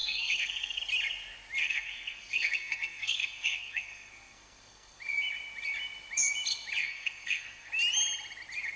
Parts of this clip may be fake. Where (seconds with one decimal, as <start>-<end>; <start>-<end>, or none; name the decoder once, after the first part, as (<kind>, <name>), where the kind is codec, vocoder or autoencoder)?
0.0-0.8 (codec, SNAC); 1.6-5.0; 6.8-7.7